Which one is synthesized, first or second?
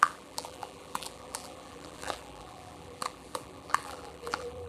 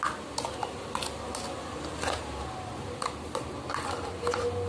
first